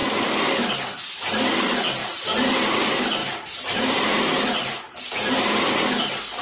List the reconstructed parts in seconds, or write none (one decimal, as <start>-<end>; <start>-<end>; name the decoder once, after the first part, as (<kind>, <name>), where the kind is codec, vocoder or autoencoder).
0.0-0.7 (vocoder, BigVGAN v2); 2.0-2.6; 3.2-5.8